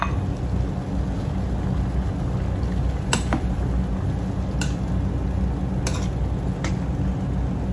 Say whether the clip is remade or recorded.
recorded